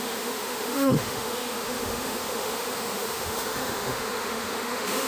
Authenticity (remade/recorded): remade